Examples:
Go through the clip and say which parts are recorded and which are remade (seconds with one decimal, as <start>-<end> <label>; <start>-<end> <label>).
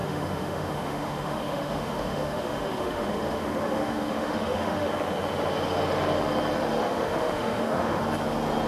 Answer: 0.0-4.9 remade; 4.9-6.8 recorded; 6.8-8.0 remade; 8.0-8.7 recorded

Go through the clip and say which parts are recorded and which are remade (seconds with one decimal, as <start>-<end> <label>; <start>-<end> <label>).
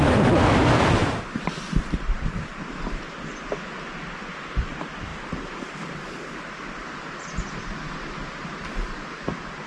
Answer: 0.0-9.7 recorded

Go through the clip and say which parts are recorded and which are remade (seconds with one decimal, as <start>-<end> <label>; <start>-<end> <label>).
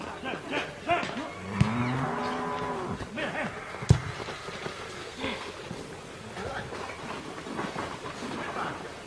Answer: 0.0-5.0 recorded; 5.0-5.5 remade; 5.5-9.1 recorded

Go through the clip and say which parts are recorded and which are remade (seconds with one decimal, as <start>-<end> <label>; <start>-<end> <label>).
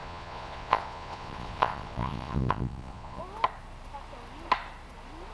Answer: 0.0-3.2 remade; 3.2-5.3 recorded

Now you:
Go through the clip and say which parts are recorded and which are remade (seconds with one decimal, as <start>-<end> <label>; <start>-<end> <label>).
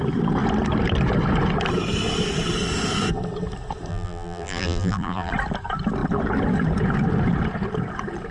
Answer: 0.0-3.9 recorded; 3.9-5.3 remade; 5.3-8.3 recorded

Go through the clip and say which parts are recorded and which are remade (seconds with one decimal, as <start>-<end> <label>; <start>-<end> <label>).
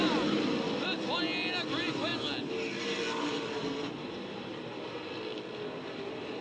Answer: 0.0-6.4 recorded